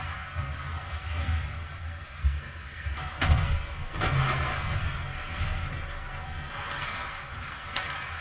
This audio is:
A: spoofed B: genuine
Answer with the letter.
A